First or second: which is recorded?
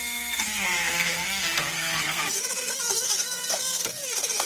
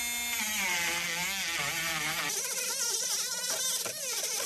second